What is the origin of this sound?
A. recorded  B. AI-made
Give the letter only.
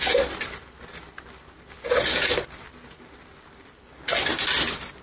A